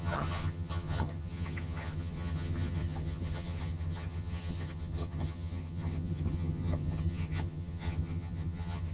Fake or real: fake